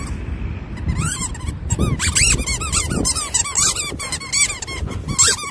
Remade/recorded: recorded